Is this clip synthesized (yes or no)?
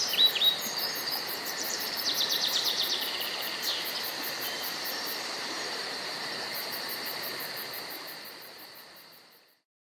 yes